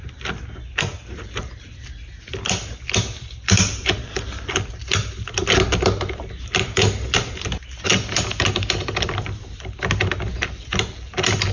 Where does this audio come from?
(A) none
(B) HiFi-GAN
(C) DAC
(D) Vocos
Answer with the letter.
A